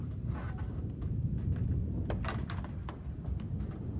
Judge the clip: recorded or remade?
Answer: remade